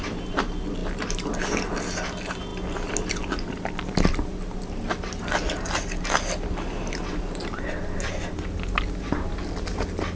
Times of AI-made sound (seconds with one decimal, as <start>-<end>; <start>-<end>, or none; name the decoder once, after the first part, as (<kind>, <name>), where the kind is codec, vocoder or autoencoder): none